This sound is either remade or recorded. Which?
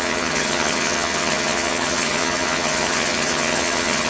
remade